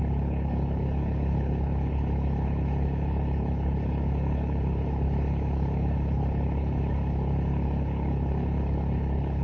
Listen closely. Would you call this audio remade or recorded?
remade